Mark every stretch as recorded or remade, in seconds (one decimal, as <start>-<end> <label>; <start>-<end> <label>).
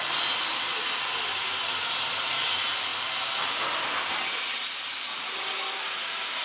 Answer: 0.0-6.4 recorded